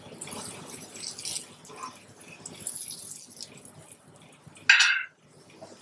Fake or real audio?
real